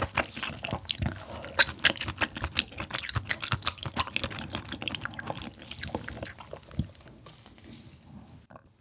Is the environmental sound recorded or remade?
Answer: recorded